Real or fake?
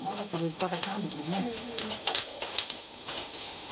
fake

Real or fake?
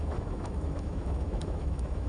fake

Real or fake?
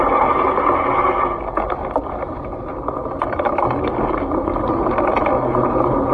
real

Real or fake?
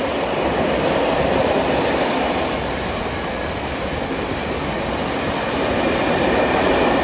real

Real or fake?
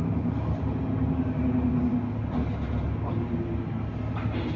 real